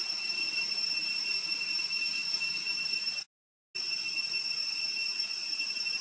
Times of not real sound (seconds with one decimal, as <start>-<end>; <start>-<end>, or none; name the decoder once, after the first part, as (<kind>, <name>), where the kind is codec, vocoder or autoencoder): none